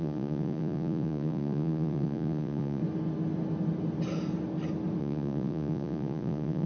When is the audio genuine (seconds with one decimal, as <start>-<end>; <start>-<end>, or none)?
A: 2.8-5.0